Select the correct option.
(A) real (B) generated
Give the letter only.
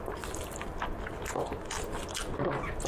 A